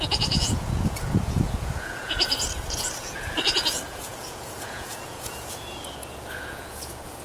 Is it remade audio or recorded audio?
remade